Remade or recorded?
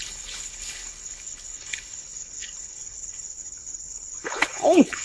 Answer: remade